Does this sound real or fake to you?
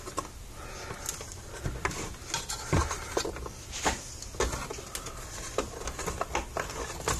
real